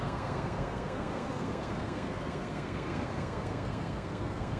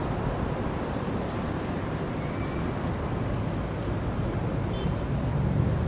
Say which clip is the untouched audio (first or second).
second